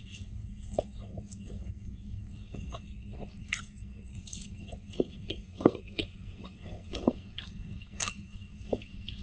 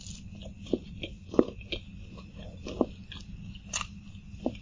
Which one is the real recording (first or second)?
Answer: second